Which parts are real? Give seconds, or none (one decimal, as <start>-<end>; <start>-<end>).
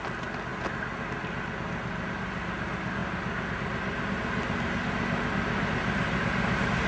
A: 0.0-6.9